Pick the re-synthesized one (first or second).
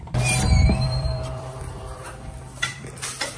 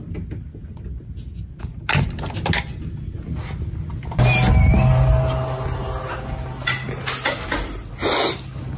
first